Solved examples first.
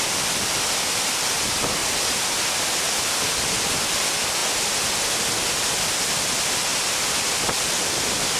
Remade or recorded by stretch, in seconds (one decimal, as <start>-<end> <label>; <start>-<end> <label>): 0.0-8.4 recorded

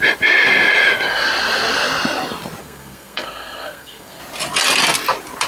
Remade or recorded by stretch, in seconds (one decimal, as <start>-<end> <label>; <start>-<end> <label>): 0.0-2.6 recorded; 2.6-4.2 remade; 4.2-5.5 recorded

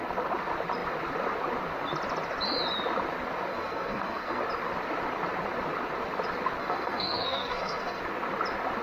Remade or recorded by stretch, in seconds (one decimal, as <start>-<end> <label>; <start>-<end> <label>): 0.0-3.5 recorded; 3.5-4.4 remade; 4.4-6.6 recorded; 6.6-8.0 remade; 8.0-8.8 recorded

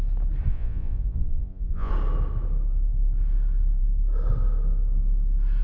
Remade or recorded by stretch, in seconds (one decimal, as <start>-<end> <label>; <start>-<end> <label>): 0.0-0.5 recorded; 0.5-1.9 remade; 1.9-5.6 recorded

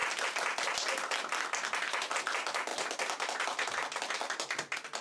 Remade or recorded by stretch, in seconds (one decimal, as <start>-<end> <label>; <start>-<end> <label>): 0.0-5.0 recorded

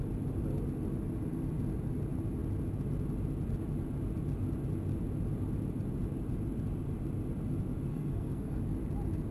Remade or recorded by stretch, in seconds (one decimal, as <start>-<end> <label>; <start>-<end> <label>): 0.0-7.9 recorded; 7.9-8.6 remade; 8.6-9.3 recorded